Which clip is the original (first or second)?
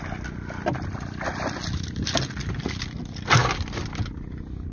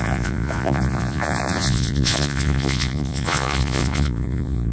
first